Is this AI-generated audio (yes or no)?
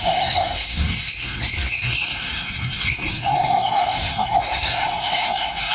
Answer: yes